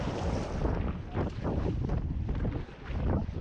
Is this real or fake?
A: real